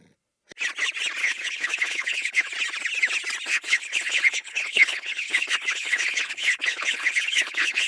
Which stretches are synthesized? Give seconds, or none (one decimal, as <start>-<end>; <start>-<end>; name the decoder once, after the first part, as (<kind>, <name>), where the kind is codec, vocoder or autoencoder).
1.2-2.5 (codec, HILCodec); 3.5-7.9